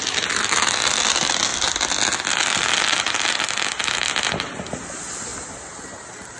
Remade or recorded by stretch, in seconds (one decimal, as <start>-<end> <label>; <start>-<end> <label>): 0.0-6.4 recorded